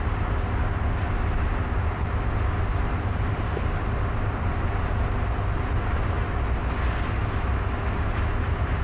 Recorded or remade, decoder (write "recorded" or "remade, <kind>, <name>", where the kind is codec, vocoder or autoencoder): recorded